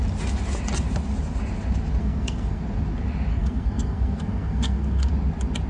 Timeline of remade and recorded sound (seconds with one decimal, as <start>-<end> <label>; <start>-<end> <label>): 0.0-2.0 recorded; 2.0-2.6 remade; 2.6-3.3 recorded; 3.3-5.1 remade; 5.1-5.7 recorded